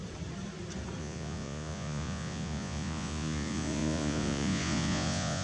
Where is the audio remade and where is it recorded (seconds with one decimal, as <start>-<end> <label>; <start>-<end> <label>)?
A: 0.0-1.0 recorded; 1.0-5.4 remade